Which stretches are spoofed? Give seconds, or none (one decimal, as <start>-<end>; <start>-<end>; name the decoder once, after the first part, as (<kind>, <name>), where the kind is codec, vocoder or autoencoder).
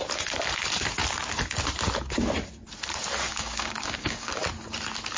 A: 3.3-4.3 (codec, DAC)